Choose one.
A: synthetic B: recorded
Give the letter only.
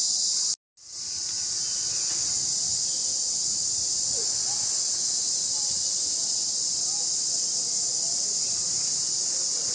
B